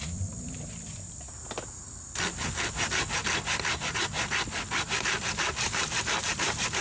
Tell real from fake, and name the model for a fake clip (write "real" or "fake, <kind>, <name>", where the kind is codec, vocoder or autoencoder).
fake, vocoder, BigVGAN v2